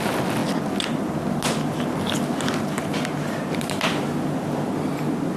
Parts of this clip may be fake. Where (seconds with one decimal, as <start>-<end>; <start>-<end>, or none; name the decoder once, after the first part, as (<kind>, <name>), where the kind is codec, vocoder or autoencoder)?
none